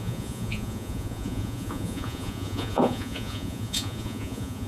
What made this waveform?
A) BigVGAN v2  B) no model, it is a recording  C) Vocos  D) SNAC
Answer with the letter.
C